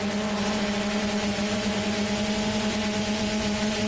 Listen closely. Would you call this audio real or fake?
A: fake